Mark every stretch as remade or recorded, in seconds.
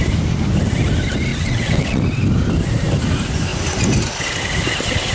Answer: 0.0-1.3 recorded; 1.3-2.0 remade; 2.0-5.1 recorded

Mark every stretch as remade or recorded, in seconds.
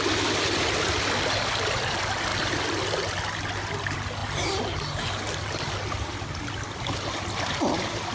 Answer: 0.0-2.3 recorded; 2.3-3.2 remade; 3.2-8.1 recorded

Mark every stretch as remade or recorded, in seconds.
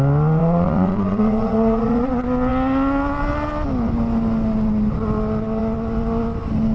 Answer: 0.0-0.4 recorded; 0.4-2.1 remade; 2.1-6.7 recorded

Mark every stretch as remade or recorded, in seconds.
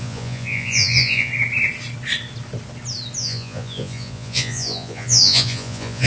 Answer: 0.0-1.3 remade; 1.3-3.2 recorded; 3.2-6.1 remade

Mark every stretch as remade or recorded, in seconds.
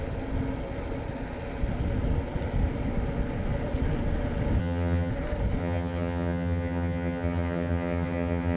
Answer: 0.0-4.6 recorded; 4.6-5.1 remade; 5.1-5.6 recorded; 5.6-8.6 remade